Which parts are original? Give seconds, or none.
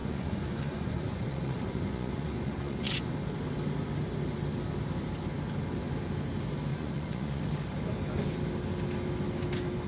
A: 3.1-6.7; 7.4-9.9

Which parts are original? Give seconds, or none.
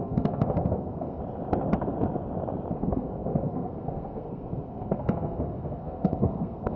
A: 1.2-2.7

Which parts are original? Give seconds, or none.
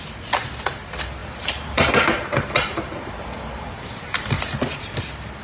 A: 0.0-1.2; 4.4-5.4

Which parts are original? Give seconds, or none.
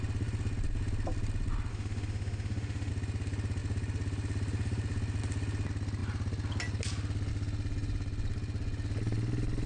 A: 0.0-1.7; 2.9-9.7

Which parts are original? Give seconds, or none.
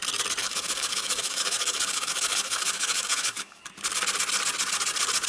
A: 0.0-0.4; 3.6-5.3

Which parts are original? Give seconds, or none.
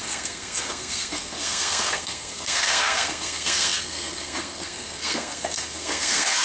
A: none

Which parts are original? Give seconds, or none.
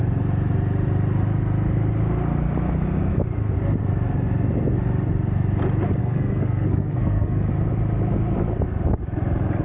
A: 0.0-6.0; 7.5-9.6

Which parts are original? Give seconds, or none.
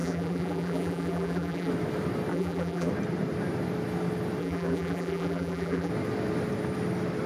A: 1.7-2.3; 2.9-4.4; 5.9-7.3